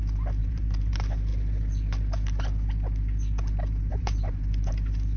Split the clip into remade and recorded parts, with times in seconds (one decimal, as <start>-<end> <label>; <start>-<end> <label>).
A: 0.0-0.4 recorded; 0.4-0.9 remade; 0.9-3.9 recorded; 3.9-4.7 remade; 4.7-5.2 recorded